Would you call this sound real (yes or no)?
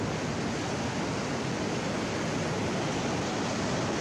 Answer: yes